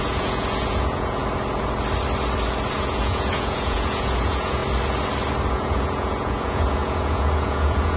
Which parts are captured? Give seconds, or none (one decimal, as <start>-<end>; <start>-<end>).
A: 1.2-2.8; 4.6-5.5